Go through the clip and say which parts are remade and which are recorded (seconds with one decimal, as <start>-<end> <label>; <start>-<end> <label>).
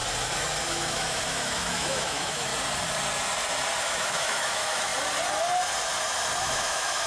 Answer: 0.0-0.6 recorded; 0.6-2.5 remade; 2.5-3.8 recorded; 3.8-4.9 remade; 4.9-6.4 recorded; 6.4-7.1 remade